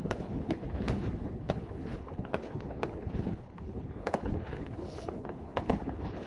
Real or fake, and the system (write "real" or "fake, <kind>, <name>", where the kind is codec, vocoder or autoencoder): fake, codec, HILCodec